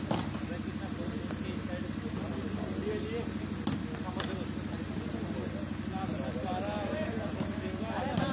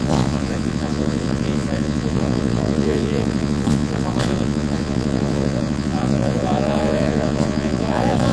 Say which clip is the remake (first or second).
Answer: second